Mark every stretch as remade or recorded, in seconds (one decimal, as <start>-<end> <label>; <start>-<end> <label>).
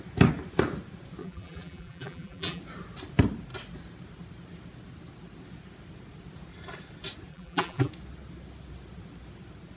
0.0-1.2 recorded; 1.2-2.6 remade; 2.6-7.3 recorded; 7.3-7.9 remade; 7.9-9.8 recorded